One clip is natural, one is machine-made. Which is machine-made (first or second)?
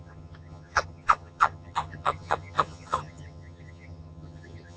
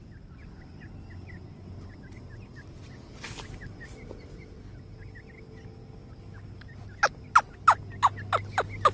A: first